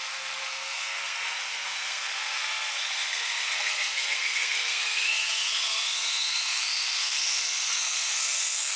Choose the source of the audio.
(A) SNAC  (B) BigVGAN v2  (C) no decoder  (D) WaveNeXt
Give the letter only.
A